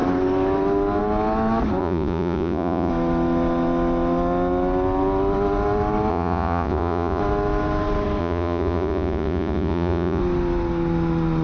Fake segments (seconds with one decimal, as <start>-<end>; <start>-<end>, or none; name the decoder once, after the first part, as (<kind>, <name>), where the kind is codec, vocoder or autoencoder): 1.8-2.9 (vocoder, Vocos); 6.1-7.2; 8.2-10.2